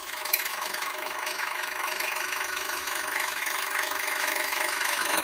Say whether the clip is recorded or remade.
remade